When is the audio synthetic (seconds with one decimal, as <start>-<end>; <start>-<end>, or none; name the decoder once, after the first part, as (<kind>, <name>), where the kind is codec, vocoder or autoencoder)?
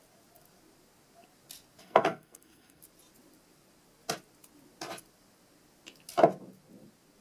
1.8-2.8 (codec, SNAC)